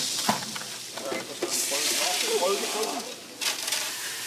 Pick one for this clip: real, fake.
real